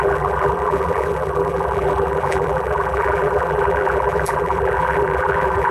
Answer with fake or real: fake